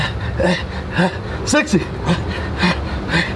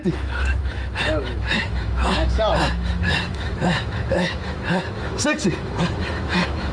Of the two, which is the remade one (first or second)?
second